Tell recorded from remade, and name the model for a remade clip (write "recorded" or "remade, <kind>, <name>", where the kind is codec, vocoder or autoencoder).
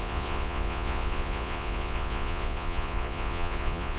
remade, vocoder, Vocos